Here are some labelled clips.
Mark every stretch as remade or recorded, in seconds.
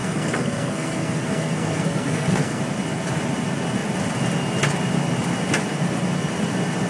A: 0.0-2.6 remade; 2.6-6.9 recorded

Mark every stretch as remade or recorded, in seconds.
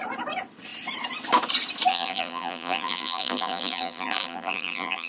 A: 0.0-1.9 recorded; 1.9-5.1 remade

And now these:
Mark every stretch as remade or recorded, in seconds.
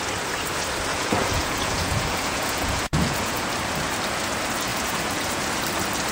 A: 0.0-0.9 recorded; 0.9-3.4 remade; 3.4-4.7 recorded; 4.7-5.5 remade; 5.5-6.1 recorded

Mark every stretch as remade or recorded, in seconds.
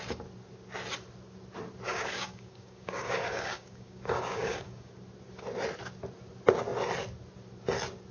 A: 0.0-1.9 recorded; 1.9-4.9 remade; 4.9-8.1 recorded